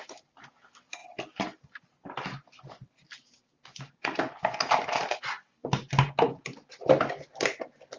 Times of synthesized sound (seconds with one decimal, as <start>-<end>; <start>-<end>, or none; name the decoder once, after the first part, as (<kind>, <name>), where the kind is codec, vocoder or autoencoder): none